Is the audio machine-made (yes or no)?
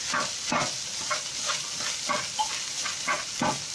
no